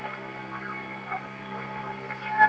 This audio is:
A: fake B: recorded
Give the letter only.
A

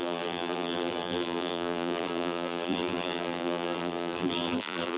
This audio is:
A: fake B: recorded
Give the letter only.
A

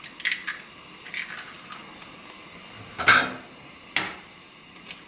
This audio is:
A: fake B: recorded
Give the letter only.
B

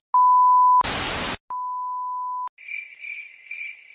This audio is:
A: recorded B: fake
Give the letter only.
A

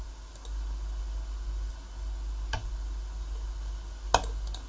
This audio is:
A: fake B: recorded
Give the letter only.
B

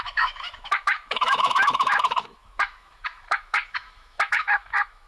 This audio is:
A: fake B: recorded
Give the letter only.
A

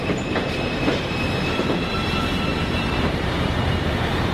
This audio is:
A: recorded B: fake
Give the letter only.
B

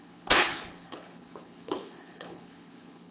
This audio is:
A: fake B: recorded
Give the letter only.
A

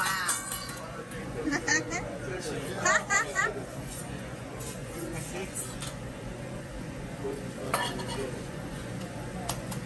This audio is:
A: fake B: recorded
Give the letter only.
A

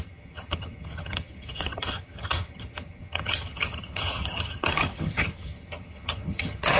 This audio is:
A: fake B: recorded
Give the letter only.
A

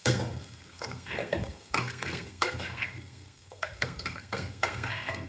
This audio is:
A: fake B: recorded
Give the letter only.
A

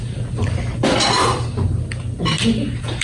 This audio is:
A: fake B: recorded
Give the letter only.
B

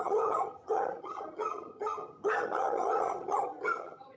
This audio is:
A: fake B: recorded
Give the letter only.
A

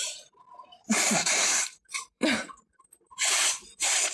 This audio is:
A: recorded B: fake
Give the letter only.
B